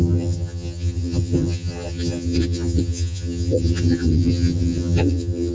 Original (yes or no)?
no